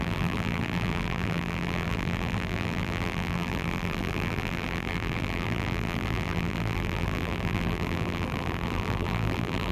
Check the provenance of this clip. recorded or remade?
remade